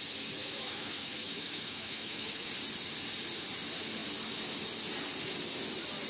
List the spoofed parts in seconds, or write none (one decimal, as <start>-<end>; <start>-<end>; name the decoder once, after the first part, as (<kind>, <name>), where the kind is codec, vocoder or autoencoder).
0.4-2.5 (autoencoder, DAC-VAE)